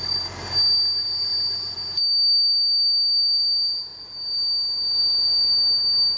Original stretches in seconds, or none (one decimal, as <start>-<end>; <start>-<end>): 0.0-6.2